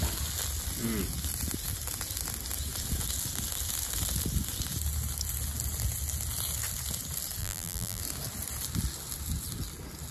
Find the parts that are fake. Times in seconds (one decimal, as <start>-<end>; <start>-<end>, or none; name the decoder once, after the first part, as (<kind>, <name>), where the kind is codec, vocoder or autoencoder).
7.4-8.0 (vocoder, BigVGAN v2)

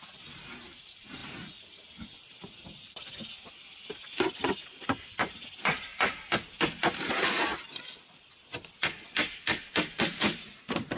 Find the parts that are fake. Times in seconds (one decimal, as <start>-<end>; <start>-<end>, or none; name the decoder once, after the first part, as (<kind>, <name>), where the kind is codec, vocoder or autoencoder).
0.0-5.9 (vocoder, BigVGAN v2); 10.0-11.0

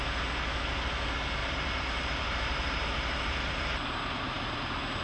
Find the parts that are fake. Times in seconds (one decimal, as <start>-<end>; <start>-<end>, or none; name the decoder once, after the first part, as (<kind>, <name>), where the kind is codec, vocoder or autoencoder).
1.4-4.4 (vocoder, BigVGAN v2)

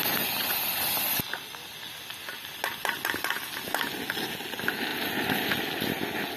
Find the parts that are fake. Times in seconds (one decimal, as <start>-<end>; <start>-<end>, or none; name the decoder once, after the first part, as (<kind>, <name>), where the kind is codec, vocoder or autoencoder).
none

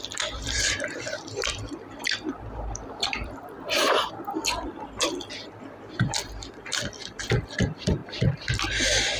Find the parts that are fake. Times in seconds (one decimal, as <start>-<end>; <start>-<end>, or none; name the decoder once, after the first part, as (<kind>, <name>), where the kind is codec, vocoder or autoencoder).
0.0-8.0 (vocoder, BigVGAN v2); 8.7-9.2

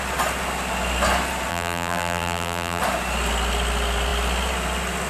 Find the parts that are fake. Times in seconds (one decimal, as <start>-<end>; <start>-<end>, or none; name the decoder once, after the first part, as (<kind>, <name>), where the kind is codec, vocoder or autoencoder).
1.5-2.8 (vocoder, BigVGAN v2)

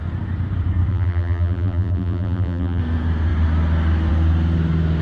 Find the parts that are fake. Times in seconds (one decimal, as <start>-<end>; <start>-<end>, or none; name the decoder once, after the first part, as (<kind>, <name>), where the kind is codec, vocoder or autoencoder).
0.9-2.8 (vocoder, BigVGAN v2)